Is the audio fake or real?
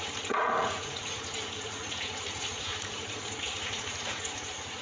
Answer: fake